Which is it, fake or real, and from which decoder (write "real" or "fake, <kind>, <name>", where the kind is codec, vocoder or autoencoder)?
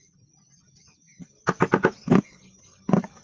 real